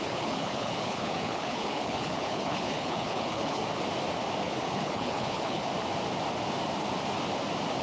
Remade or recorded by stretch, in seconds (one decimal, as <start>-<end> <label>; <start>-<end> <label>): 0.0-3.6 remade; 3.6-4.4 recorded; 4.4-5.7 remade; 5.7-7.8 recorded